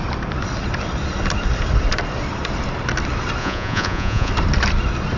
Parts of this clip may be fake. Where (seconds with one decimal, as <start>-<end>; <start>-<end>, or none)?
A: 3.4-4.3